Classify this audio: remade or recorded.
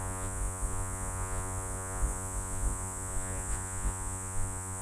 remade